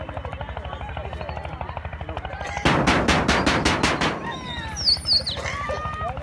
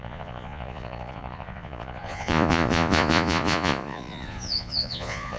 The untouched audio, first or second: first